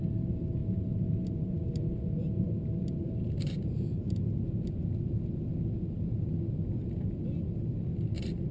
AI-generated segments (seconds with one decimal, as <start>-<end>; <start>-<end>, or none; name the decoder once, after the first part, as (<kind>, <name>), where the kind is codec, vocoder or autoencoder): none